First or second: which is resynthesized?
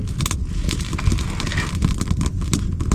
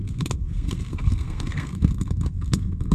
second